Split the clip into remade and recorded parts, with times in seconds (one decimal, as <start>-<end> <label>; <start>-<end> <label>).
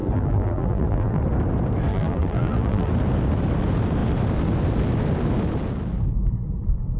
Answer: 0.0-1.2 remade; 1.2-1.9 recorded; 1.9-2.9 remade; 2.9-7.0 recorded